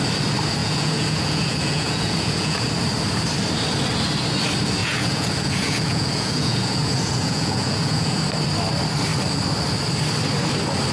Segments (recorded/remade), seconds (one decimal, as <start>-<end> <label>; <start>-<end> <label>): 0.0-0.6 recorded; 0.6-2.7 remade; 2.7-4.8 recorded; 4.8-8.2 remade; 8.2-10.9 recorded